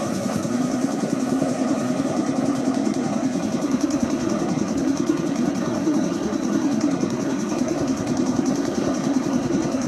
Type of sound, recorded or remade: remade